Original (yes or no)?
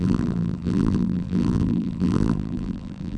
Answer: no